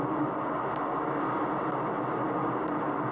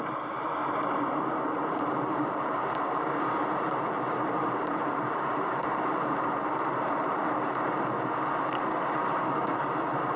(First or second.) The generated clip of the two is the second